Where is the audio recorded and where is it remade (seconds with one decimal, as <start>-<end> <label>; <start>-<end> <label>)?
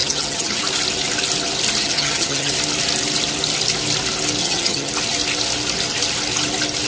0.0-0.6 remade; 0.6-1.8 recorded; 1.8-2.5 remade; 2.5-4.4 recorded; 4.4-4.9 remade; 4.9-6.9 recorded